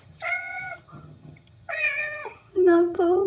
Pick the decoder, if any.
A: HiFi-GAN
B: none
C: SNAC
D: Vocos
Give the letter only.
A